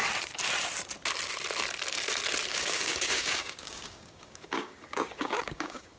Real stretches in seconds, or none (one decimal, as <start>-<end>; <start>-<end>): 0.0-2.5